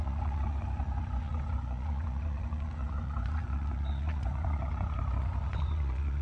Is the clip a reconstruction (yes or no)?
yes